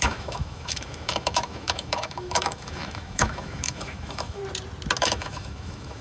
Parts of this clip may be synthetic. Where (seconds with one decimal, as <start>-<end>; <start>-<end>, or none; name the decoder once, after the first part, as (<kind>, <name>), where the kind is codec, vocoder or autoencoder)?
0.0-4.4 (autoencoder, DAC-VAE); 5.0-6.0